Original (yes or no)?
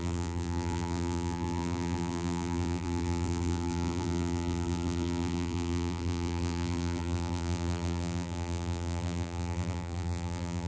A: no